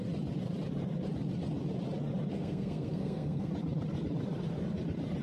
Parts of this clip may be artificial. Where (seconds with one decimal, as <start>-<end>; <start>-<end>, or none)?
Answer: 2.3-3.5